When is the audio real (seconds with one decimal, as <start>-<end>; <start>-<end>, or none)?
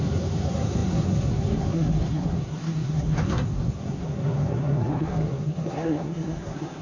none